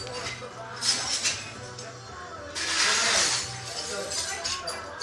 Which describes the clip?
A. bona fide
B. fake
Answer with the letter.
A